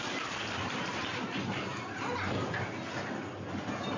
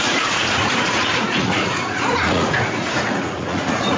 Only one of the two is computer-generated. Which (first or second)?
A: second